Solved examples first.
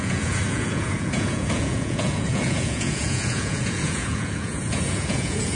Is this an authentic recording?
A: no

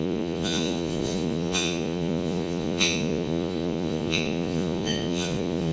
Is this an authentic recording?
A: no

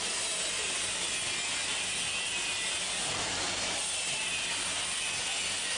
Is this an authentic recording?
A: yes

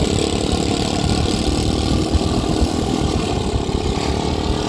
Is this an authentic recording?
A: yes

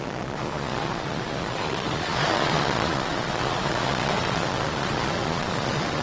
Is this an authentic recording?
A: no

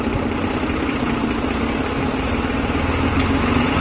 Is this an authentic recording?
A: yes